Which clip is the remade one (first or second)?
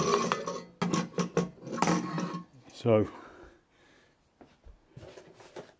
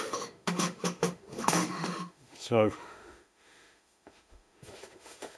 second